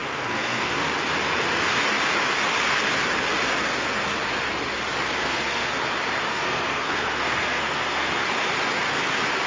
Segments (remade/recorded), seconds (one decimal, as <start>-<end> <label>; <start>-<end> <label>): 0.0-0.7 remade; 0.7-5.2 recorded; 5.2-5.7 remade; 5.7-6.3 recorded; 6.3-8.1 remade; 8.1-9.5 recorded